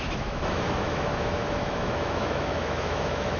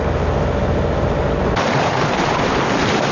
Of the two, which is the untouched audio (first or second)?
second